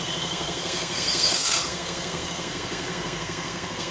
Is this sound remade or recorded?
remade